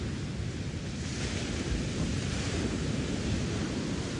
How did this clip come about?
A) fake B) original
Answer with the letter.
B